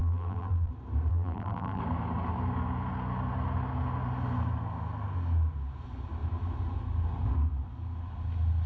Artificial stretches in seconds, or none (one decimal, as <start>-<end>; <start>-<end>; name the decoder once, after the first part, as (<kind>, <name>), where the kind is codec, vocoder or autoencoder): 0.0-0.7 (vocoder, BigVGAN v2); 1.1-1.8